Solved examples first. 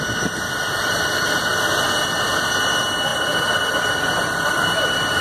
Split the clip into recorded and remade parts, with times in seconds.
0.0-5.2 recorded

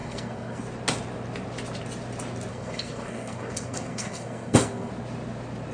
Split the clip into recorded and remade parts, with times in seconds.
0.0-0.6 remade; 0.6-2.5 recorded; 2.5-4.9 remade; 4.9-5.7 recorded